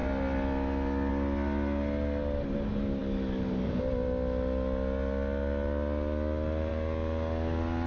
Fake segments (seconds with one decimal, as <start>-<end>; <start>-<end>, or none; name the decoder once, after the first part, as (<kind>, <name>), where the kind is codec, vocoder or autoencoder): none

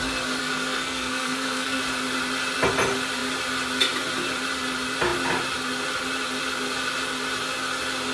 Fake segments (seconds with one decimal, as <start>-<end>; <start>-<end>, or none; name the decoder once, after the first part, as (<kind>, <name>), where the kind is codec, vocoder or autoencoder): 0.4-1.8 (codec, SNAC)

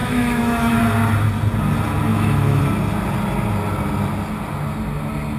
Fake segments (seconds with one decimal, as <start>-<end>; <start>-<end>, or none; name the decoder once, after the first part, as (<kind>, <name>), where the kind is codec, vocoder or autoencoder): 0.0-0.8 (autoencoder, DAC-VAE); 2.1-2.6

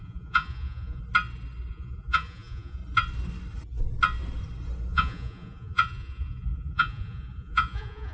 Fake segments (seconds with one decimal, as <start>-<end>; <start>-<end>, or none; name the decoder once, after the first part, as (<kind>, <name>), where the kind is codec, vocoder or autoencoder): 0.0-1.0 (vocoder, Vocos); 1.7-2.8; 4.9-8.1